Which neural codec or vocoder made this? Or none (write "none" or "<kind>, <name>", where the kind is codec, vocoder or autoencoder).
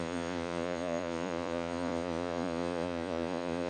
vocoder, Vocos